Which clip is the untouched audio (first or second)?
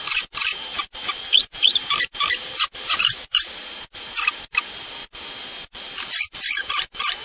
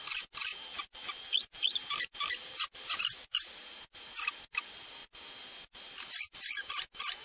second